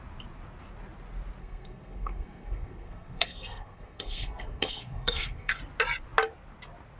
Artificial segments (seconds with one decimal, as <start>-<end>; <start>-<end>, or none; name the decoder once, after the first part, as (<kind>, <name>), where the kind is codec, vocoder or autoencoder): 1.4-5.6 (codec, SNAC)